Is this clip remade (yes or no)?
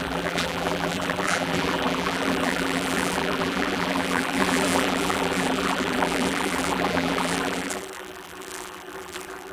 yes